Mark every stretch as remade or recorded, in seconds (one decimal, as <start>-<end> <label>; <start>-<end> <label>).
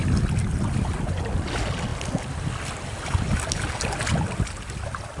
0.0-5.2 recorded